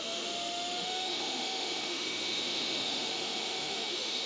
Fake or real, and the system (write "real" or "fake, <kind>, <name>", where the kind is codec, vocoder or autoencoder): fake, autoencoder, DAC-VAE